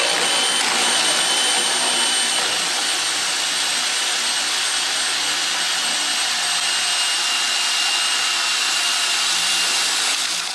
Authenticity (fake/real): real